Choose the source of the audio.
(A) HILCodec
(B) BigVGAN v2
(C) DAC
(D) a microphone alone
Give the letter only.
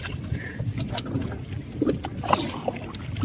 D